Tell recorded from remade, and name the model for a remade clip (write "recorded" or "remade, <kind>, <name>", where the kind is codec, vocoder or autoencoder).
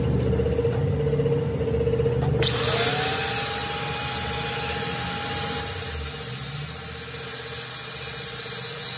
recorded